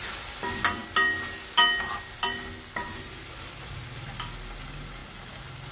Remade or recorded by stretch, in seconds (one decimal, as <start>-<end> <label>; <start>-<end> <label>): 0.0-5.7 recorded